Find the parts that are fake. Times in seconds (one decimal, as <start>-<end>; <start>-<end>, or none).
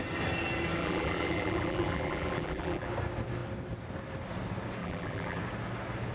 0.8-2.9; 4.8-5.4